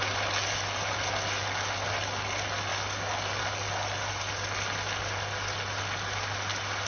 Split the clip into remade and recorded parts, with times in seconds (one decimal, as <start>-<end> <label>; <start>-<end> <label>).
0.0-6.9 recorded